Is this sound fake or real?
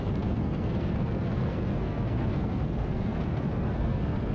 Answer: fake